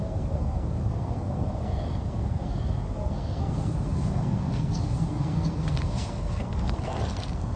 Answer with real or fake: fake